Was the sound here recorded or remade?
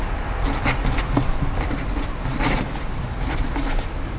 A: recorded